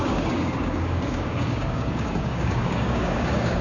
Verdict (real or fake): fake